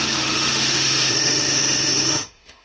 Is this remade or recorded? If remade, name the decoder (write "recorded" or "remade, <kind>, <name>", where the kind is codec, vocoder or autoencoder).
remade, autoencoder, DAC-VAE